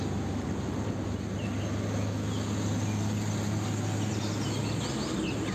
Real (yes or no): yes